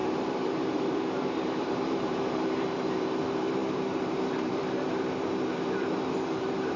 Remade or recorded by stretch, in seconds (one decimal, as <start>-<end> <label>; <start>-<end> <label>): 0.0-6.8 remade

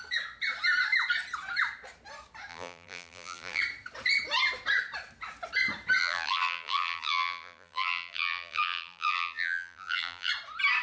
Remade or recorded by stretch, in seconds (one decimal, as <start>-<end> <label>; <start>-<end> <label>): 0.0-2.5 recorded; 2.5-3.6 remade; 3.6-6.0 recorded; 6.0-10.3 remade; 10.3-10.8 recorded

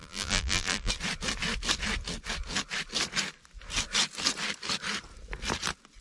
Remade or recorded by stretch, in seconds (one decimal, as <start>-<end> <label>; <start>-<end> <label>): 0.0-0.9 remade; 0.9-6.0 recorded

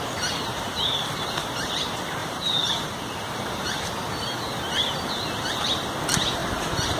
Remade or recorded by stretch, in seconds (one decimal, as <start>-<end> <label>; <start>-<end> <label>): 0.0-0.5 recorded; 0.5-1.8 remade; 1.8-2.2 recorded; 2.2-4.0 remade; 4.0-6.4 recorded; 6.4-7.0 remade

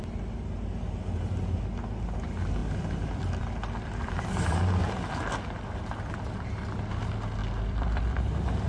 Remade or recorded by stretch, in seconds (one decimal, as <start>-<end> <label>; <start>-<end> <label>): 0.0-2.6 recorded; 2.6-4.1 remade; 4.1-7.4 recorded; 7.4-8.0 remade; 8.0-8.7 recorded

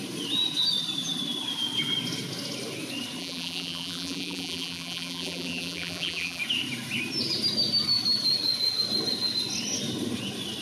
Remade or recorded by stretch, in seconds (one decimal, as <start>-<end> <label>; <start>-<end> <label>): 0.0-3.2 recorded; 3.2-6.4 remade; 6.4-10.6 recorded

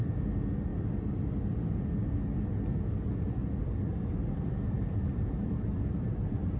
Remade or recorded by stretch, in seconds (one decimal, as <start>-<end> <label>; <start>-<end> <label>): 0.0-3.9 recorded; 3.9-6.6 remade

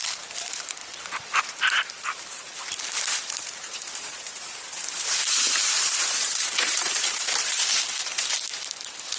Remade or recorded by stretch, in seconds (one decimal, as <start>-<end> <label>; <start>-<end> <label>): 0.0-0.8 remade; 0.8-1.4 recorded; 1.4-9.2 remade